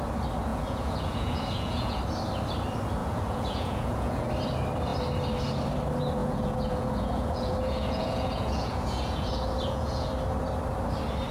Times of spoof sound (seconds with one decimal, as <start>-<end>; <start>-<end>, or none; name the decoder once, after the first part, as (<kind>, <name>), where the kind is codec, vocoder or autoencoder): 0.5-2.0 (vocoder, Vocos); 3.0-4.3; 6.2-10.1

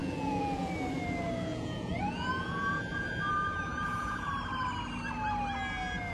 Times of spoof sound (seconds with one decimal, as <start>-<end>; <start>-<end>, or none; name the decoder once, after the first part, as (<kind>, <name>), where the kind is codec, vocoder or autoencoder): 0.0-0.7 (vocoder, Vocos); 1.5-3.3; 3.7-4.3

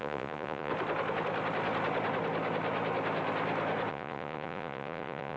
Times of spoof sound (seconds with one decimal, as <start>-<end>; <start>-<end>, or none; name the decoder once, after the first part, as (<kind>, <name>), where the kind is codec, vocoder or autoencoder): 0.0-0.7 (vocoder, Vocos); 3.9-5.4

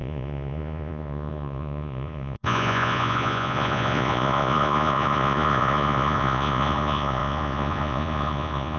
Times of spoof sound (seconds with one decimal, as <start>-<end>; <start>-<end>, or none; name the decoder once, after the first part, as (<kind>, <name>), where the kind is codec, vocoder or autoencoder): 0.0-8.8 (vocoder, Vocos)